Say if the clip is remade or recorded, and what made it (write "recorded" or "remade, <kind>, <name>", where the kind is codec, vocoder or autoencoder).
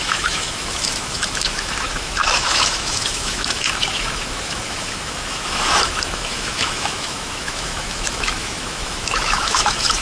remade, autoencoder, DAC-VAE